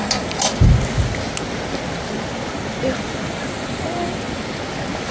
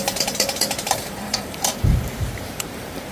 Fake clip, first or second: second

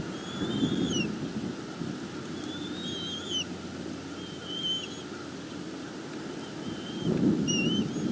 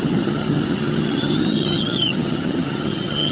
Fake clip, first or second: second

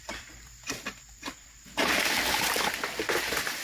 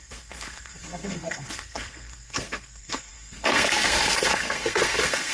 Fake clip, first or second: second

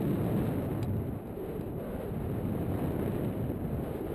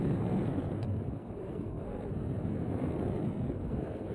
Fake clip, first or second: second